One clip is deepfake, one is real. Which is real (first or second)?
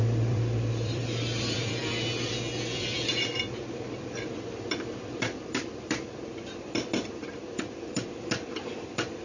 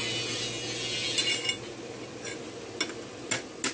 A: second